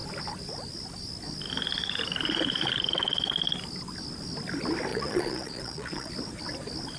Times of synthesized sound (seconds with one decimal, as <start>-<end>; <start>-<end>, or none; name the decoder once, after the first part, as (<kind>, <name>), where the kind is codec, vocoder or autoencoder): 4.9-6.1 (vocoder, Vocos)